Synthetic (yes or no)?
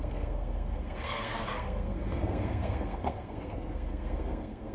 yes